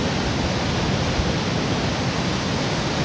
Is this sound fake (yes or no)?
no